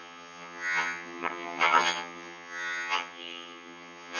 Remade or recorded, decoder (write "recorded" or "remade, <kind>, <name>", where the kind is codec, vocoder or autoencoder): remade, vocoder, HiFi-GAN